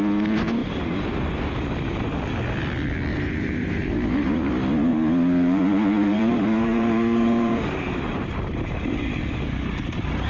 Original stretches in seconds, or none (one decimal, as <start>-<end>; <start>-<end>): 0.0-0.6; 2.1-3.1; 4.5-4.9; 9.2-10.3